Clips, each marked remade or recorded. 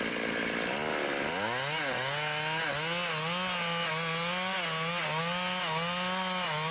recorded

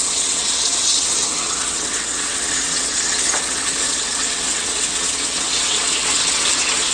remade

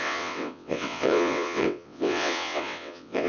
remade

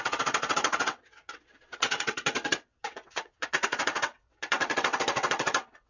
remade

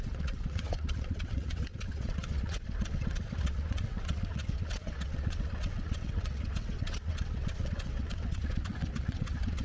remade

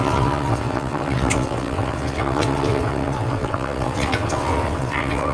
remade